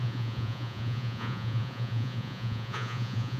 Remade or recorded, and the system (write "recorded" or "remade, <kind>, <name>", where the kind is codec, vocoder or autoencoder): remade, vocoder, Vocos